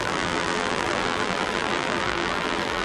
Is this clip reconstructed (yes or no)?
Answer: yes